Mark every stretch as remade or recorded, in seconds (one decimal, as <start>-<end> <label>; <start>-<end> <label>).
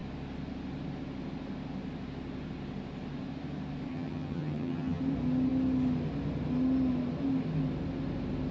0.0-3.9 recorded; 3.9-5.0 remade; 5.0-8.5 recorded